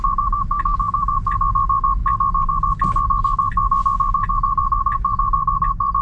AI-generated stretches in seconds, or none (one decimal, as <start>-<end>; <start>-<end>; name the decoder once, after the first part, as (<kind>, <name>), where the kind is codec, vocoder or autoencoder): none